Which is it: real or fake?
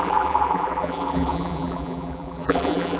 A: fake